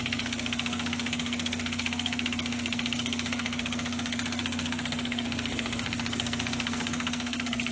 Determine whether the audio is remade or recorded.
remade